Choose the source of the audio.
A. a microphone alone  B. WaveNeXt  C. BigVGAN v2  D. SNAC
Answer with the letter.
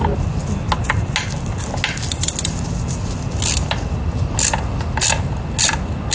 A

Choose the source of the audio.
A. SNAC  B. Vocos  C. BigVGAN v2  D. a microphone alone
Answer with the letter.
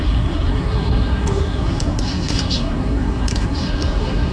A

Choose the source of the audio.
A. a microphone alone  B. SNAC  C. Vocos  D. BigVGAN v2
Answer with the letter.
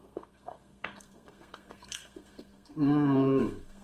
B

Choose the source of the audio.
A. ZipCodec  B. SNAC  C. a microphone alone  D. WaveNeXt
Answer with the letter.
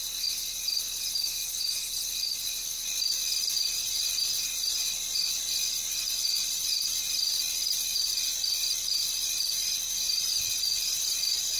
C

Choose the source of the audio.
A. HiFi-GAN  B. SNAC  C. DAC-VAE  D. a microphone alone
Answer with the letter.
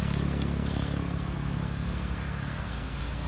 B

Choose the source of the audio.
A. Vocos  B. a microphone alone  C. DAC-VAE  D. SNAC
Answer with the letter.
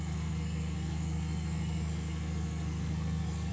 D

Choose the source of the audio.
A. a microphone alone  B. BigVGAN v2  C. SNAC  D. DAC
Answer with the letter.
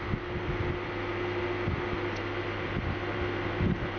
A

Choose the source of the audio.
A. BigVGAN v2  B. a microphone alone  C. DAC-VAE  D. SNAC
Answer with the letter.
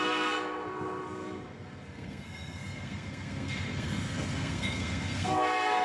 D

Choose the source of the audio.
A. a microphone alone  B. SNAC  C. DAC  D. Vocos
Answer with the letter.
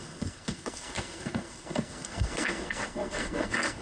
B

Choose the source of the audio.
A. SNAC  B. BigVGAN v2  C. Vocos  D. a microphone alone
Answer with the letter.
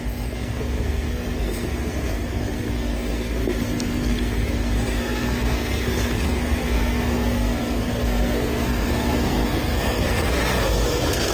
A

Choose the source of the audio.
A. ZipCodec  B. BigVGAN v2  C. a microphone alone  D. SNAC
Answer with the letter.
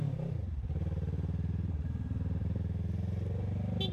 C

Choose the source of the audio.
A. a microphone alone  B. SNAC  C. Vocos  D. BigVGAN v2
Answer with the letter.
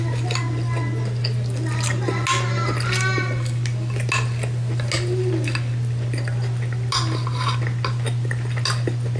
A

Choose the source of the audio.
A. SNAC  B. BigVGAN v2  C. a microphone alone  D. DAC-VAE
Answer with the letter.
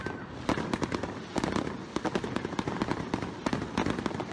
C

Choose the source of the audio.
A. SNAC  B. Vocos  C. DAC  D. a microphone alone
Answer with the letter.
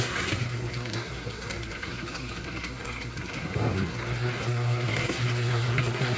A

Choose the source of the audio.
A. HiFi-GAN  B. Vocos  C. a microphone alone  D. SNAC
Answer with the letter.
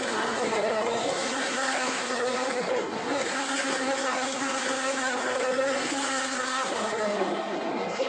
D